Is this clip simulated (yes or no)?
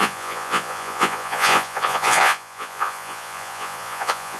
yes